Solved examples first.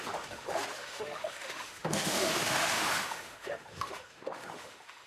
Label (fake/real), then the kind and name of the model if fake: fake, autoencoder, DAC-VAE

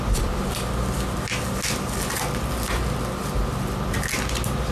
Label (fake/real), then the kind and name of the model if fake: real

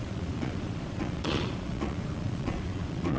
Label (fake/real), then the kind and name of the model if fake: fake, vocoder, Vocos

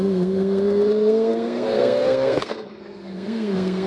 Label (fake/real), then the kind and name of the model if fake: fake, codec, SNAC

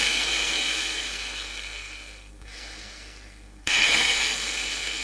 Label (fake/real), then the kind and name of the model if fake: fake, codec, SNAC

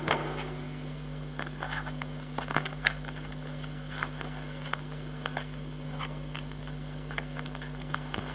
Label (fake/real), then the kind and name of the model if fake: fake, codec, SNAC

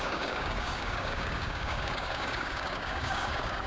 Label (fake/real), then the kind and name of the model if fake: fake, codec, DAC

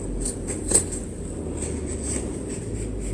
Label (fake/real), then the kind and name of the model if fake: real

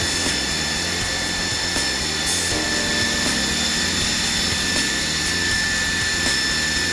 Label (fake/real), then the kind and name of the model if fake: real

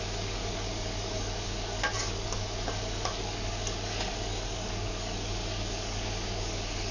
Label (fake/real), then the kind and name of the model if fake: fake, codec, DAC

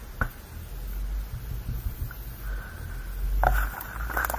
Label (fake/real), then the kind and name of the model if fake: real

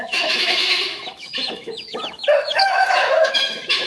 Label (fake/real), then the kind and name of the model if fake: fake, autoencoder, DAC-VAE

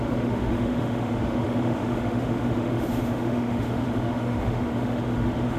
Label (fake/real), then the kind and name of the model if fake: fake, autoencoder, DAC-VAE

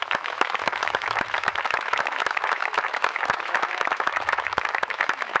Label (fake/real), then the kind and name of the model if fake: fake, autoencoder, DAC-VAE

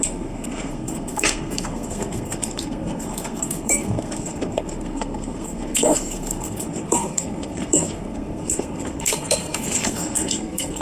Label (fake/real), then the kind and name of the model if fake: fake, codec, SNAC